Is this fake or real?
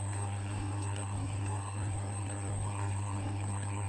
fake